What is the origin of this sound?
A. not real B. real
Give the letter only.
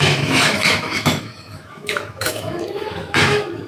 A